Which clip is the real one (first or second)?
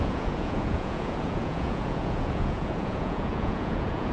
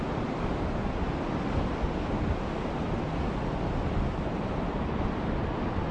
second